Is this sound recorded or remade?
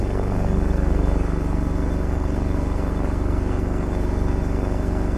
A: remade